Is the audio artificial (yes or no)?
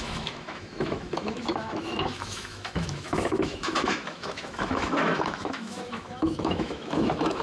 yes